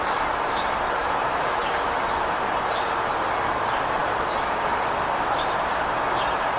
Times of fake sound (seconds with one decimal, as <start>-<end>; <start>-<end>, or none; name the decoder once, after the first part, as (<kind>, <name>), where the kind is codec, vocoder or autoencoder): 1.0-1.6 (vocoder, BigVGAN v2)